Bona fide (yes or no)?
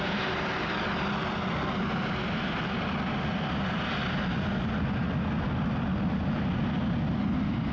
yes